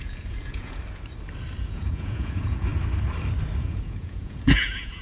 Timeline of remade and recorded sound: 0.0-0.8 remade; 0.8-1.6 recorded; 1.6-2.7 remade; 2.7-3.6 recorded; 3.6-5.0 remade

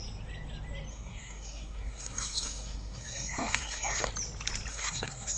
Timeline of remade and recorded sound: 0.0-0.9 recorded; 0.9-4.1 remade; 4.1-4.7 recorded; 4.7-5.4 remade

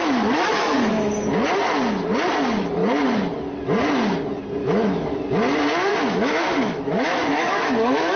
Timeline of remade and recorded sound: 0.0-1.1 remade; 1.1-4.6 recorded; 4.6-5.2 remade; 5.2-5.9 recorded; 5.9-8.2 remade

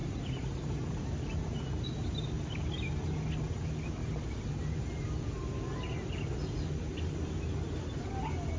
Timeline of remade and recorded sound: 0.0-8.6 recorded

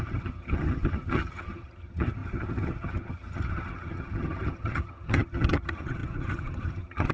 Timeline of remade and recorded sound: 0.0-7.1 remade

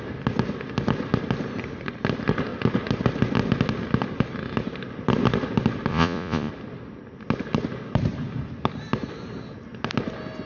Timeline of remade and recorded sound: 0.0-5.9 recorded; 5.9-6.5 remade; 6.5-10.5 recorded

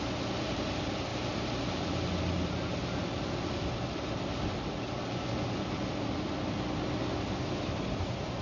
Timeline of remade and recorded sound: 0.0-8.4 recorded